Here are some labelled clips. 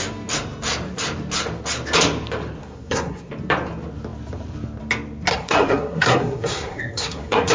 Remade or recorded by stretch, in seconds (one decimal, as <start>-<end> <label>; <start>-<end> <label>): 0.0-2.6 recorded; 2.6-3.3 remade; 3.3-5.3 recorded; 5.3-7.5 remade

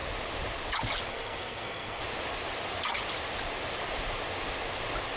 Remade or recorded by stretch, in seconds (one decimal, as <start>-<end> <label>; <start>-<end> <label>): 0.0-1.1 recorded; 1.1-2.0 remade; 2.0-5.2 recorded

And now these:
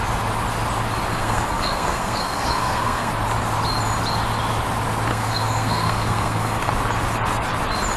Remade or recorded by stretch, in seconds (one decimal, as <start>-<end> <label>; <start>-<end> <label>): 0.0-1.1 recorded; 1.1-3.1 remade; 3.1-5.1 recorded; 5.1-6.7 remade; 6.7-8.0 recorded

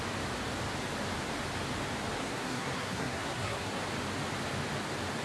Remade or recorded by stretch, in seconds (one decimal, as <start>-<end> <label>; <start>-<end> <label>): 0.0-2.2 recorded; 2.2-3.8 remade; 3.8-5.2 recorded

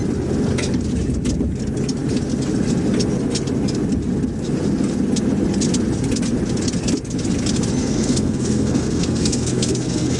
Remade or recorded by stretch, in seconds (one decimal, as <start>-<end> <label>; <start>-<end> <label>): 0.0-7.8 recorded; 7.8-10.2 remade